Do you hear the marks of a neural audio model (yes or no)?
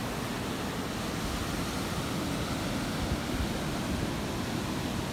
no